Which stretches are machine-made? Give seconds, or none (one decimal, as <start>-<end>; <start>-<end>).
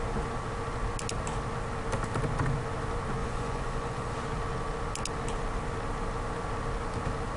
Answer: 3.2-4.1